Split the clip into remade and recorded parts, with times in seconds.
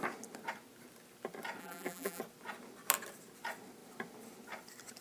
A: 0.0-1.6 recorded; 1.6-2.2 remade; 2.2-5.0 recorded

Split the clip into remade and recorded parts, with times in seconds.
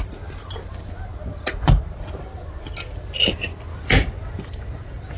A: 0.0-5.2 recorded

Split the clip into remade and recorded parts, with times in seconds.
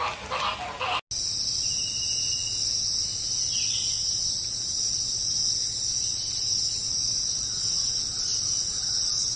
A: 0.0-9.4 recorded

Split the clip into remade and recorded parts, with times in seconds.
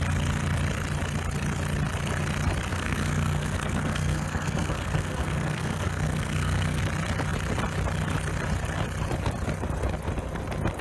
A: 0.0-2.7 recorded; 2.7-6.8 remade; 6.8-10.8 recorded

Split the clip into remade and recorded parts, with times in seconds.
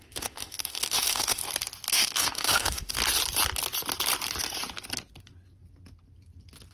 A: 0.0-1.4 remade; 1.4-1.9 recorded; 1.9-3.0 remade; 3.0-6.7 recorded